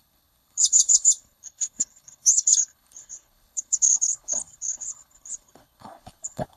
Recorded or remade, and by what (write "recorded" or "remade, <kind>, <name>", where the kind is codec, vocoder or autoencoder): remade, codec, HILCodec